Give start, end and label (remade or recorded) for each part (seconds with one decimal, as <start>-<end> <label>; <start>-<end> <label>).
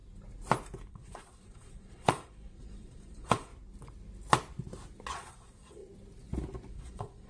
0.0-0.9 recorded; 0.9-3.5 remade; 3.5-5.1 recorded; 5.1-5.8 remade; 5.8-6.7 recorded; 6.7-7.3 remade